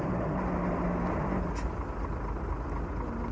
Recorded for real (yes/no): yes